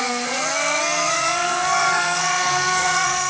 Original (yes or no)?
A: no